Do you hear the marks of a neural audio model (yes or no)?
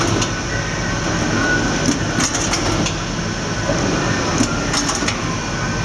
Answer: no